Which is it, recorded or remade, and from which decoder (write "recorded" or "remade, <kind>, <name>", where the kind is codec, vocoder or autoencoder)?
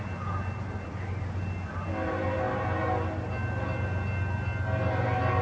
recorded